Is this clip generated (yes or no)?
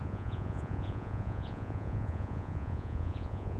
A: yes